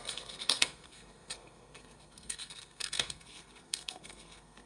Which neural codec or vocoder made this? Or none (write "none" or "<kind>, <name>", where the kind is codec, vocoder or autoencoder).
codec, SNAC